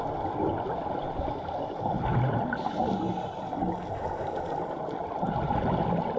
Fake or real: real